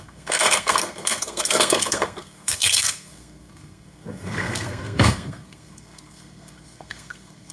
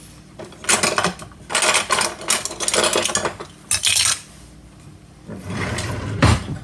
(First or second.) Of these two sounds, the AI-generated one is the first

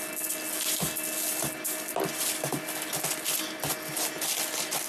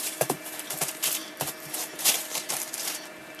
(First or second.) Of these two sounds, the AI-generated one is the second